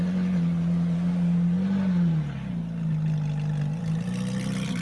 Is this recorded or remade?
recorded